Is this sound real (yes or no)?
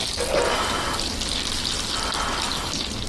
yes